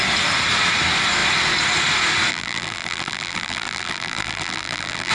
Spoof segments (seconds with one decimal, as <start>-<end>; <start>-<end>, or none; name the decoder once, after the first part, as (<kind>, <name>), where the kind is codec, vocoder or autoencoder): 2.3-5.1 (vocoder, BigVGAN v2)